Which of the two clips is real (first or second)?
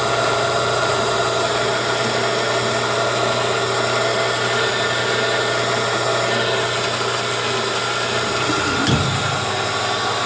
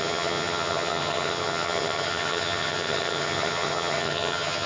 first